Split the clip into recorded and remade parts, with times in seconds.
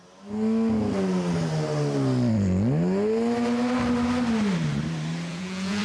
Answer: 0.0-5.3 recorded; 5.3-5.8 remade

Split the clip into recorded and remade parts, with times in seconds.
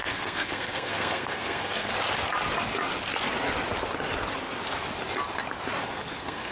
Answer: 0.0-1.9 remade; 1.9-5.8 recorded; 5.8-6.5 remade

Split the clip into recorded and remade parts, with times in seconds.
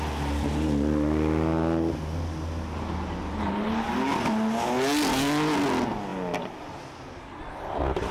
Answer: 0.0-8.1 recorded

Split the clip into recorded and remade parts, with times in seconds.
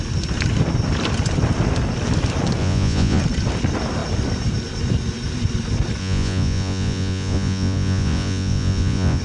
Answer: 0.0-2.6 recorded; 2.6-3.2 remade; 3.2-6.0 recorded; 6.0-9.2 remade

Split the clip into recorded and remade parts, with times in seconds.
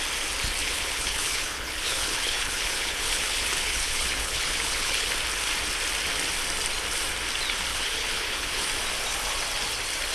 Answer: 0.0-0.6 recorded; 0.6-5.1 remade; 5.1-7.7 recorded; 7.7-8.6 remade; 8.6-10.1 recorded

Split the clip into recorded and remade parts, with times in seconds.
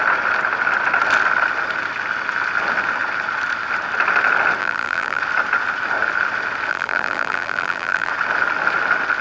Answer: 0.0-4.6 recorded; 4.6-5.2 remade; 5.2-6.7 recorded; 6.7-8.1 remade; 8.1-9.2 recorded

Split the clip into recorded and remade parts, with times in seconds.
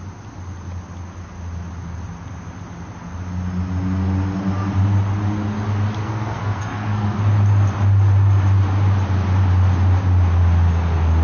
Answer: 0.0-6.0 recorded; 6.0-7.2 remade; 7.2-11.2 recorded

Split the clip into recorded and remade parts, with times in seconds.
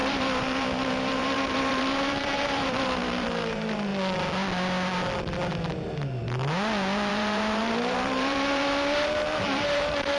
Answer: 0.0-3.9 remade; 3.9-7.1 recorded; 7.1-10.2 remade